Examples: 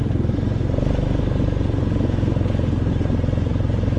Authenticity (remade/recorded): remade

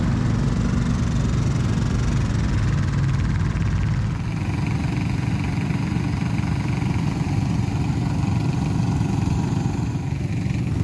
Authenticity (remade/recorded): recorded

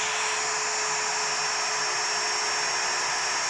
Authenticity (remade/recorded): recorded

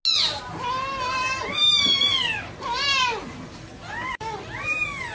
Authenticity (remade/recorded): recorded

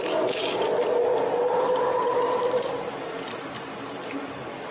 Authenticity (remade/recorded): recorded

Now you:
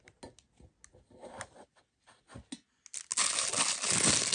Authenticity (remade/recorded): recorded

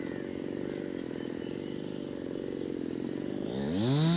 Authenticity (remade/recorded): recorded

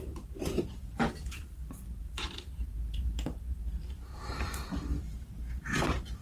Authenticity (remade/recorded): remade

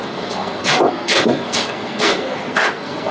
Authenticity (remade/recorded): remade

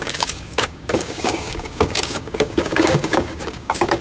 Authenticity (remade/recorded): remade